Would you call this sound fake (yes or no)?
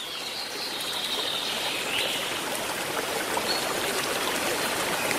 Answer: no